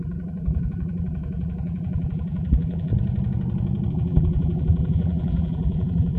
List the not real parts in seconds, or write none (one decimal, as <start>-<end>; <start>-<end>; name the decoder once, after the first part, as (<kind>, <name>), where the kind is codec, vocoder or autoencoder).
0.0-2.9 (vocoder, BigVGAN v2); 3.9-6.2